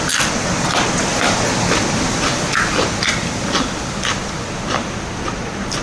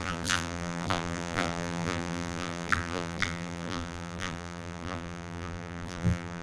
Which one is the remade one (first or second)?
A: second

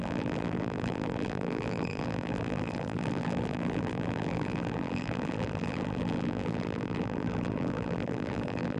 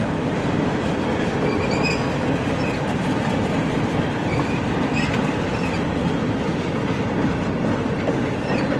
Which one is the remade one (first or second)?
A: first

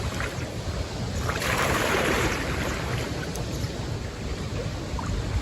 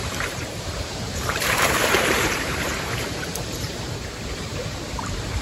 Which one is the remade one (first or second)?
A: second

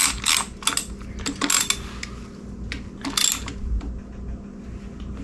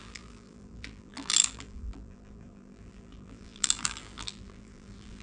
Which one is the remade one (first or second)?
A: second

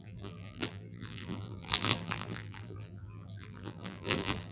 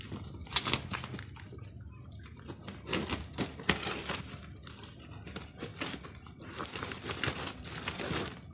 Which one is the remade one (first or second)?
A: first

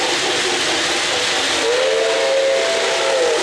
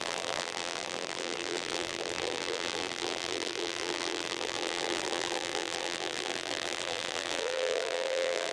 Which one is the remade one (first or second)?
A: second